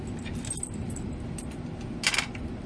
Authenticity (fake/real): real